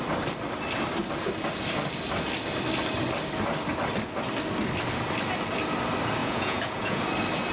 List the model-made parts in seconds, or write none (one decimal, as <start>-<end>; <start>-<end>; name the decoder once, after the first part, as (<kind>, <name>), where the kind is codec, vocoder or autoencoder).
6.2-7.0 (vocoder, Vocos)